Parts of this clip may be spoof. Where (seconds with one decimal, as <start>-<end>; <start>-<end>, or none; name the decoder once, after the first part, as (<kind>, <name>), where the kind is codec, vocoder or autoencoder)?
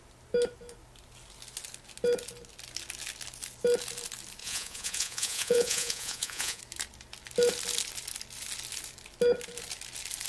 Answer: 4.4-6.6 (vocoder, Vocos)